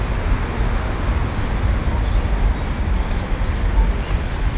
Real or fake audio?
real